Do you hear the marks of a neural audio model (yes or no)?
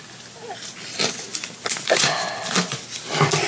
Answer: no